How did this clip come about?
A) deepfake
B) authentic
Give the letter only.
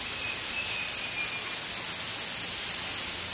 B